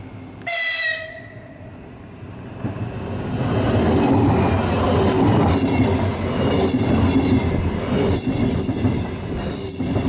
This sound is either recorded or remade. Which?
recorded